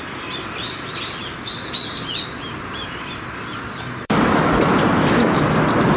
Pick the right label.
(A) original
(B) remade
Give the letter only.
B